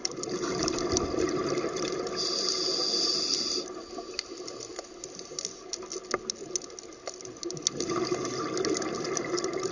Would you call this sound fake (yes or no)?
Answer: no